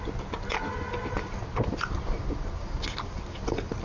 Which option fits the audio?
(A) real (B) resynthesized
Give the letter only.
A